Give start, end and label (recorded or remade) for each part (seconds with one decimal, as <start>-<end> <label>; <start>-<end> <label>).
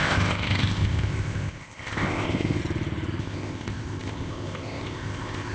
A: 0.0-2.6 remade; 2.6-3.2 recorded; 3.2-5.5 remade